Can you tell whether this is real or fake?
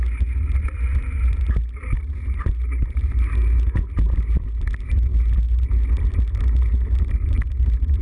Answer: real